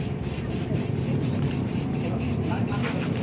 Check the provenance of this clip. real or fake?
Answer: fake